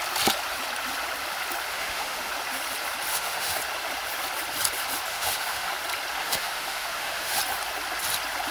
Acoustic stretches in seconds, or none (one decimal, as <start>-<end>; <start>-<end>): 0.0-1.7; 2.3-3.1; 3.6-5.1; 5.7-6.2; 7.4-8.5